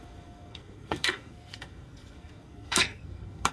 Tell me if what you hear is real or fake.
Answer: fake